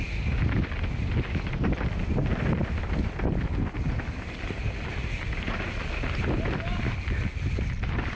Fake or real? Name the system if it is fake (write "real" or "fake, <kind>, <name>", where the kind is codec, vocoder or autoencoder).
real